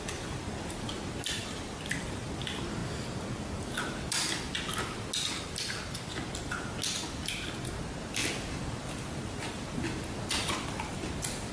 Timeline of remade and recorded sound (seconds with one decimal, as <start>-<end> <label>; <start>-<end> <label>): 0.0-1.4 recorded; 1.4-2.4 remade; 2.4-8.2 recorded; 8.2-11.5 remade